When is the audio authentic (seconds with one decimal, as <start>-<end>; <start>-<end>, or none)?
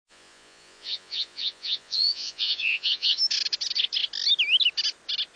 3.2-5.4